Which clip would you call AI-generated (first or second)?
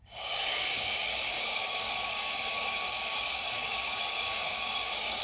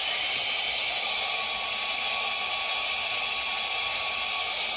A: first